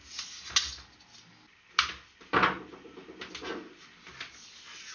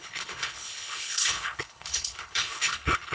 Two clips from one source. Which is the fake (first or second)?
second